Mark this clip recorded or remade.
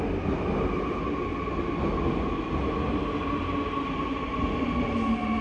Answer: recorded